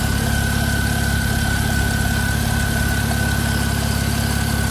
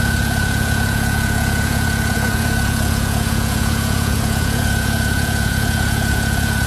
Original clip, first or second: first